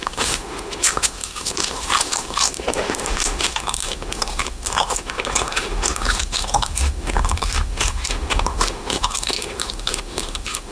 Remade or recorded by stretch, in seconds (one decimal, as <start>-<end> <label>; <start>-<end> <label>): 0.0-10.7 remade